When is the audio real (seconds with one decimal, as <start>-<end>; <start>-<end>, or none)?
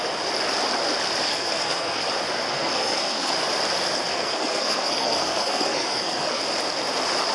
0.0-1.3; 2.0-2.5; 3.3-4.1; 6.4-7.3